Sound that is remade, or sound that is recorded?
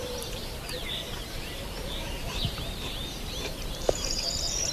remade